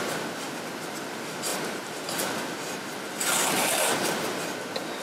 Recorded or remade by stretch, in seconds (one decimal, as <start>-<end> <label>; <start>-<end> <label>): 0.0-1.5 recorded; 1.5-2.1 remade; 2.1-5.0 recorded